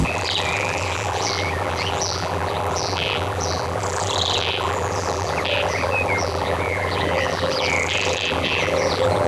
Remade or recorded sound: remade